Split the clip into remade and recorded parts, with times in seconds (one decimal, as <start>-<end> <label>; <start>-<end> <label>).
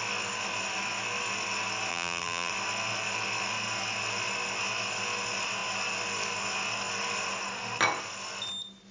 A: 0.0-1.9 recorded; 1.9-2.5 remade; 2.5-8.9 recorded